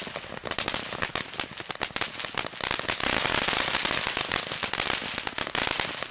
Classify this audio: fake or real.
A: real